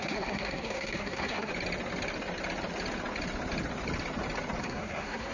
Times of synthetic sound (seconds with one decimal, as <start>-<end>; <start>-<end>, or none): 0.0-1.5; 4.6-5.3